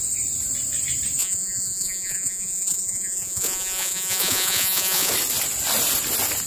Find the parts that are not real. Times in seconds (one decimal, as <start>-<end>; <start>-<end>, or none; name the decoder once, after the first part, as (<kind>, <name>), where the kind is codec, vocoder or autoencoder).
1.2-5.1 (vocoder, Vocos)

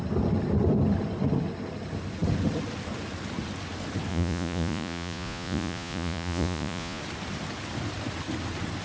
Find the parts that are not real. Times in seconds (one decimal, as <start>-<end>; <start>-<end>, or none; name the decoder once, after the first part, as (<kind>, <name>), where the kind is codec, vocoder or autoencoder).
4.1-7.0 (vocoder, Vocos)